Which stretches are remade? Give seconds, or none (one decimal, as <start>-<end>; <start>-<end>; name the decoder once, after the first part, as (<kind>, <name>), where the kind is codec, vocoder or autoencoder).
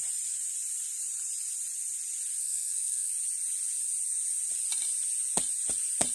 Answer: 2.4-3.1 (codec, SNAC)